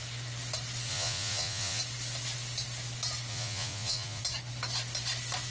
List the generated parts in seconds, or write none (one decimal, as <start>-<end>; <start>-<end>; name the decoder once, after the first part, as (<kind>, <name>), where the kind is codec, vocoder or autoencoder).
0.9-1.8 (vocoder, Vocos); 3.3-4.2